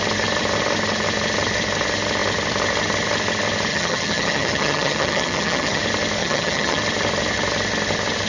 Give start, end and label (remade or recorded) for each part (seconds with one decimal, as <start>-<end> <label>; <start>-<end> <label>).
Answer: 0.0-3.7 recorded; 3.7-5.8 remade; 5.8-6.2 recorded; 6.2-6.8 remade; 6.8-8.3 recorded